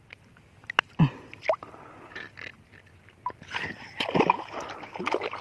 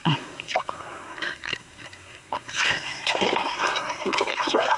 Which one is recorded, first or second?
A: first